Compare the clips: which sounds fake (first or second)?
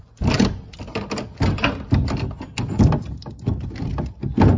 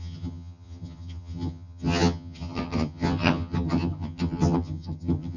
second